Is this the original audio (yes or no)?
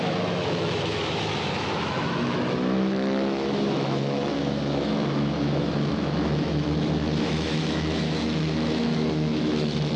no